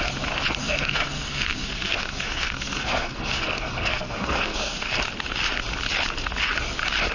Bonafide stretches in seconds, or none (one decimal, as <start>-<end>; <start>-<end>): 0.0-0.6; 4.9-7.1